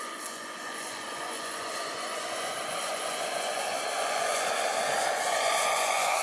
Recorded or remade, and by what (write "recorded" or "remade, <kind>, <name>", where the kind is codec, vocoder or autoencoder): remade, vocoder, Vocos